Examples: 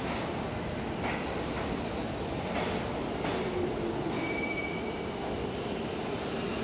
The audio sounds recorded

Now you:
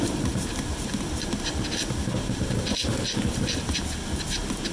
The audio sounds recorded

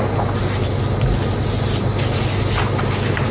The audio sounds recorded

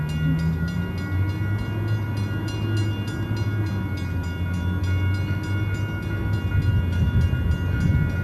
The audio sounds recorded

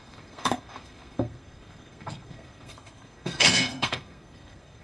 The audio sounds remade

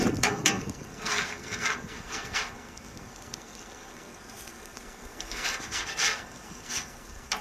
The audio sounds remade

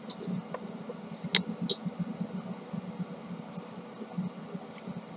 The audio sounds recorded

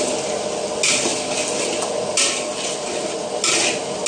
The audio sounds recorded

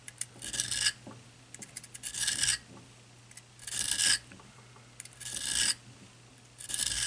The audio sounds recorded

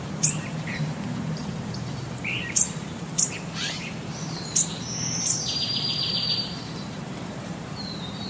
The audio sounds remade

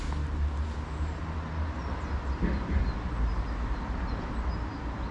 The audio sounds recorded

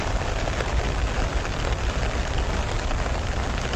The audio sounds recorded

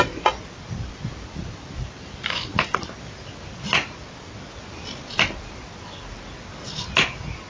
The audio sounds recorded